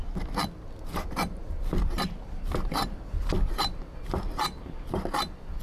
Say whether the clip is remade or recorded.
recorded